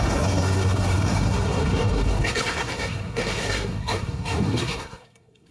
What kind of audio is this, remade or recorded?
remade